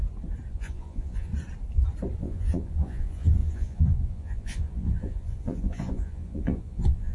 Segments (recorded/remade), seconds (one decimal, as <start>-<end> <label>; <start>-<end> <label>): 0.0-0.5 recorded; 0.5-1.3 remade; 1.3-2.2 recorded; 2.2-7.1 remade